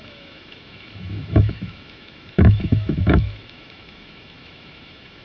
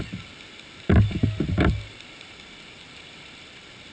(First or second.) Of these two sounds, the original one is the second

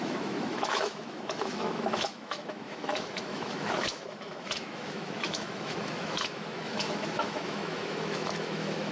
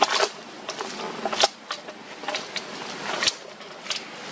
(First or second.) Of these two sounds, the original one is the second